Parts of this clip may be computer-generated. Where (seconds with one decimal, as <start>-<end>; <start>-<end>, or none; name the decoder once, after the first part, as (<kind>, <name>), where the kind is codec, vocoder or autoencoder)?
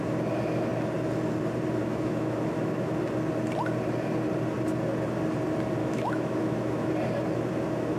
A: 1.8-3.0 (autoencoder, DAC-VAE); 5.8-6.9